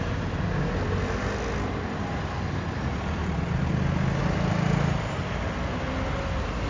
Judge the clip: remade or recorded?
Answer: recorded